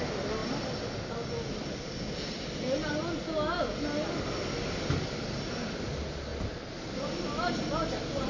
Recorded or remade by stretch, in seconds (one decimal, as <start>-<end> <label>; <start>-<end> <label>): 0.0-8.3 recorded